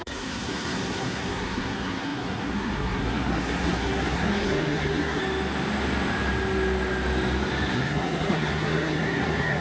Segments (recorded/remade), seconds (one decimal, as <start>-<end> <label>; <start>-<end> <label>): 0.0-5.2 remade; 5.2-7.7 recorded; 7.7-9.6 remade